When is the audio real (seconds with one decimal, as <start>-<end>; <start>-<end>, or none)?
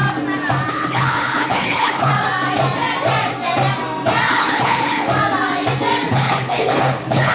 0.0-0.7; 2.1-4.3; 5.1-6.1